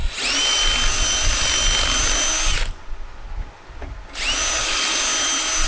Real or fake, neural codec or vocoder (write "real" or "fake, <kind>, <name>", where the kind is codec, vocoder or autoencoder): real